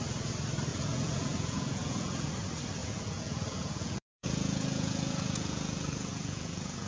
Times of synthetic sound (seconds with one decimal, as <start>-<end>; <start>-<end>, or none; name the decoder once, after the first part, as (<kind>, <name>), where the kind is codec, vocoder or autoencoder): 0.7-2.3 (vocoder, Vocos); 2.8-6.9